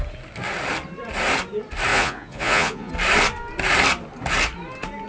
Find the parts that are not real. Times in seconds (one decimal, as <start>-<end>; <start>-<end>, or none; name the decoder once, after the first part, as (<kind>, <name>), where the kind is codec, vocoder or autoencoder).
1.9-2.9 (vocoder, Vocos)